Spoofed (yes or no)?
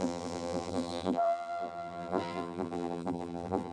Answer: yes